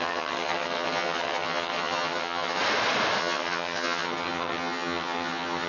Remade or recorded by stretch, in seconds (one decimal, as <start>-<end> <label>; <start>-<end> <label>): 0.0-2.6 remade; 2.6-3.2 recorded; 3.2-5.7 remade